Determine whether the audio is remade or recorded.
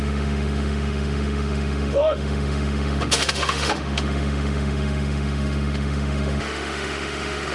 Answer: remade